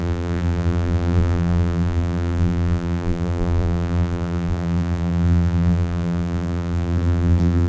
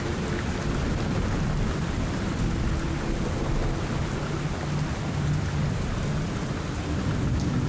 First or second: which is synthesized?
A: first